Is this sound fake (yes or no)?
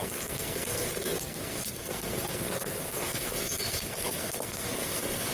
yes